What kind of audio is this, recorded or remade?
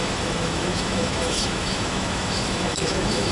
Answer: remade